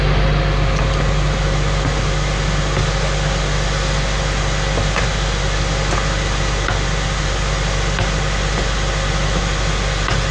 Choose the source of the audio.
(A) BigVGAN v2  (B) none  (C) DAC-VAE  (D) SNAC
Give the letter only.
B